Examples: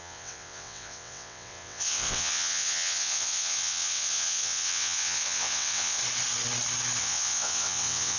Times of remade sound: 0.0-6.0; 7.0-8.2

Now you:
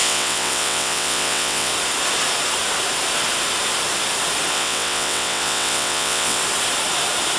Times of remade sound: 0.0-1.7; 4.5-6.4